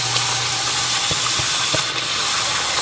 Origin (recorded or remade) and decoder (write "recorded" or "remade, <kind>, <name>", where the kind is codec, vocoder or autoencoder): recorded